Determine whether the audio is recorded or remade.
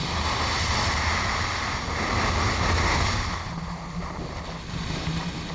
recorded